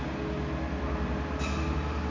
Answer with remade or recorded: recorded